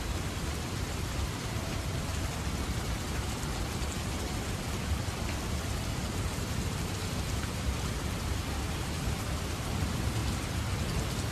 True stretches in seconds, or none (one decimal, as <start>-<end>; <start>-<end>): 2.1-4.5; 10.2-11.3